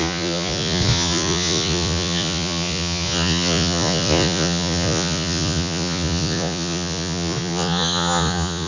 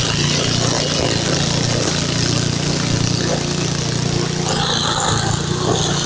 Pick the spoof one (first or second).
first